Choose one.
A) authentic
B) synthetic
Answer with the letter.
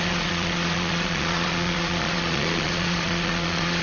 B